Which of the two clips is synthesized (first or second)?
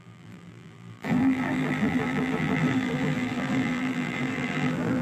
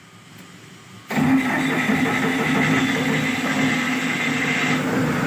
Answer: first